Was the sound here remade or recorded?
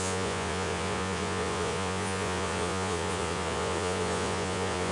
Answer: remade